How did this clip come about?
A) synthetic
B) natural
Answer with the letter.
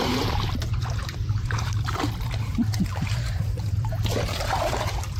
A